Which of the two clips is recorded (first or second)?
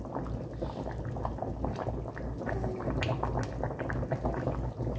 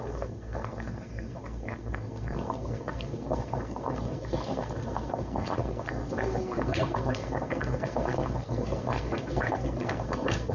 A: first